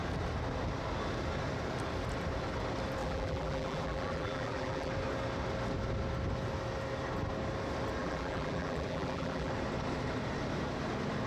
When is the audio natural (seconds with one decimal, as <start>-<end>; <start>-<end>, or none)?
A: 0.0-3.0; 4.9-8.0; 9.5-11.3

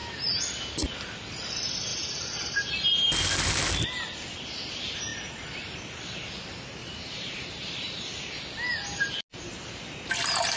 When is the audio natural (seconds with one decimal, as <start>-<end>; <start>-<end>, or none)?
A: 0.0-1.9; 2.7-6.8; 8.2-10.6

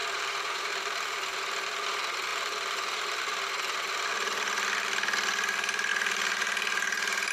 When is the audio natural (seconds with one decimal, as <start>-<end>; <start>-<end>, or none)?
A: 0.7-5.9